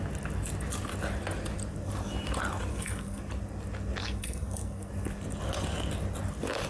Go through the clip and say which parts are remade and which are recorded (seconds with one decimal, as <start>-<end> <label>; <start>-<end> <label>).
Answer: 0.0-2.7 recorded; 2.7-3.2 remade; 3.2-4.0 recorded; 4.0-4.9 remade; 4.9-6.7 recorded